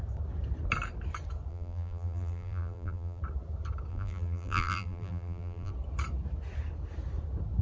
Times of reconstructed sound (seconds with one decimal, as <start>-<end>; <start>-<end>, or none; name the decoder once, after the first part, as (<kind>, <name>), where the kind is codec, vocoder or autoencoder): 1.5-3.2 (vocoder, BigVGAN v2); 3.9-5.7